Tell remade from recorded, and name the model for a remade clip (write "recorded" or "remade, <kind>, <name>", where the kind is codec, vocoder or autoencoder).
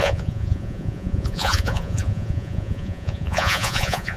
remade, vocoder, Vocos